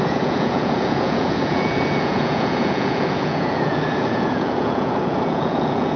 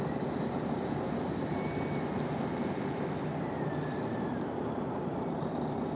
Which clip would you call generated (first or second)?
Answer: first